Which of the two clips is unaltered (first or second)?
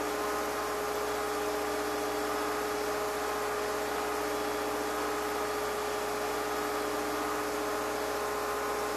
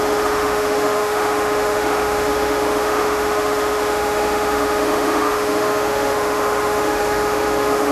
first